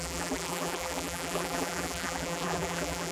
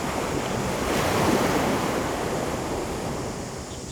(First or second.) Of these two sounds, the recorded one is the second